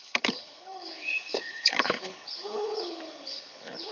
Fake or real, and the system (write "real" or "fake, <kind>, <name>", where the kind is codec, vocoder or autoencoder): fake, codec, HILCodec